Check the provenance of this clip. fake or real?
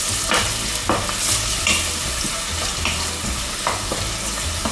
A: real